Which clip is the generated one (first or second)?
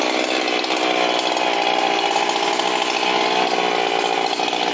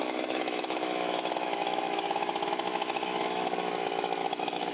second